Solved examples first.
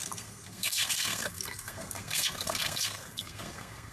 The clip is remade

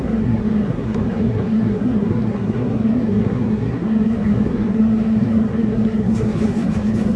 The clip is remade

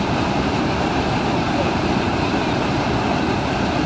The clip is recorded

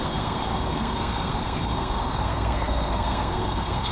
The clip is remade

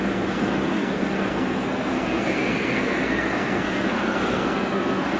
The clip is remade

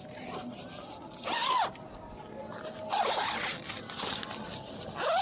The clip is recorded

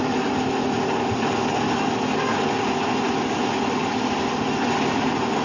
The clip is recorded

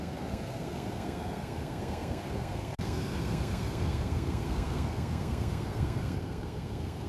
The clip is remade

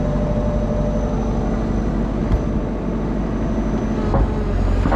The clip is recorded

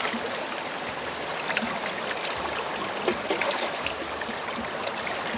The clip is recorded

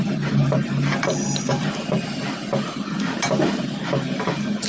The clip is recorded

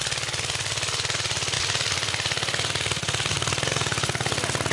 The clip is recorded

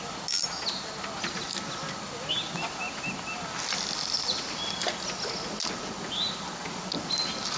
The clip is recorded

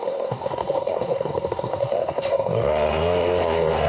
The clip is remade